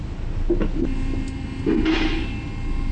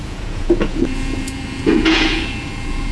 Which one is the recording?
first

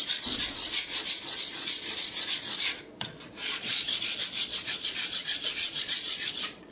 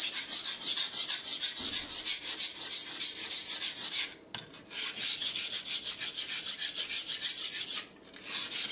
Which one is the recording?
second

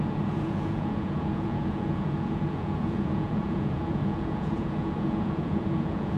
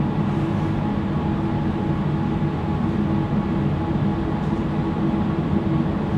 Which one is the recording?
second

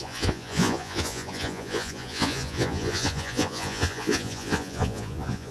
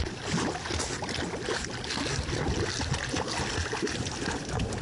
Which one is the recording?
second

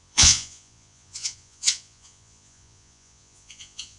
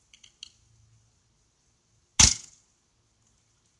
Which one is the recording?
second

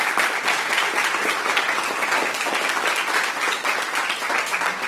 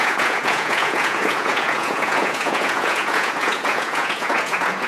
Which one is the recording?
first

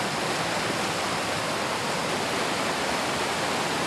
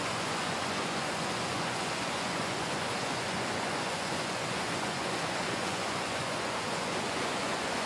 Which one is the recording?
first